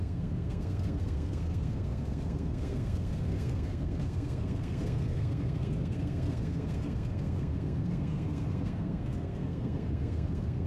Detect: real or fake fake